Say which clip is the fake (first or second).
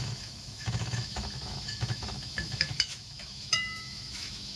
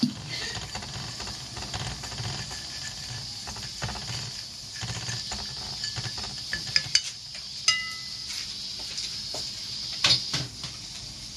first